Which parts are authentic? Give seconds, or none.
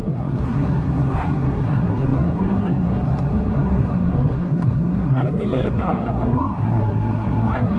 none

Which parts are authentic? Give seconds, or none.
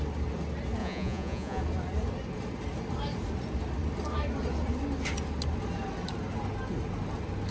0.0-0.8; 1.6-7.5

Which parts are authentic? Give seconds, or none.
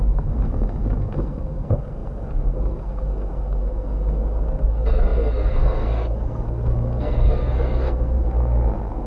none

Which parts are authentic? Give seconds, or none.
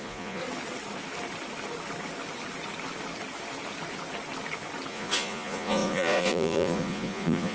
0.4-4.9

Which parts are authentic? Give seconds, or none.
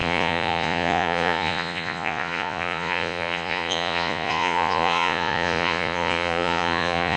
none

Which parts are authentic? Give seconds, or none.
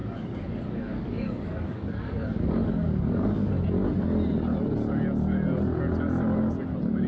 3.5-7.1